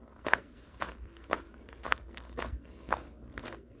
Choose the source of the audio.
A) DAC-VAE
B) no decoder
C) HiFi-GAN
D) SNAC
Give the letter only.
D